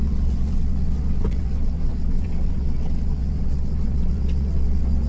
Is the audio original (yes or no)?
no